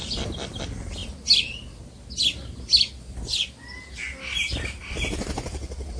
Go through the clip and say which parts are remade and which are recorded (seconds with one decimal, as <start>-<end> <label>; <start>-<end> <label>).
0.0-6.0 recorded